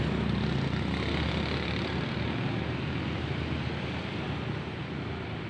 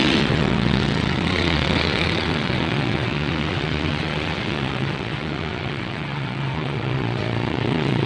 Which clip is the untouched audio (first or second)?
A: first